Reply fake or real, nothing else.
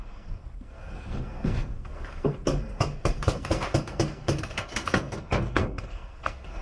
fake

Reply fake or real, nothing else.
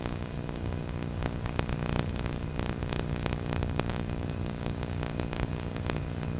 fake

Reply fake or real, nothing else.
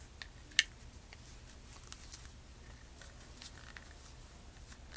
real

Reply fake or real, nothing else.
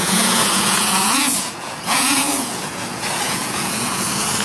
fake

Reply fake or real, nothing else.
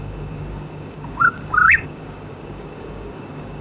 fake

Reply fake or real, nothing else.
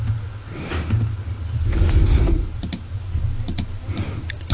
real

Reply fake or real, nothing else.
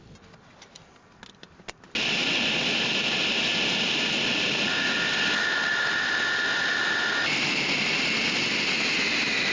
real